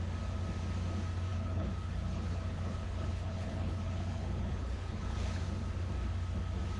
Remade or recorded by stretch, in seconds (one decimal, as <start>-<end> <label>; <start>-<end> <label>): 0.0-1.3 recorded; 1.3-5.4 remade; 5.4-6.8 recorded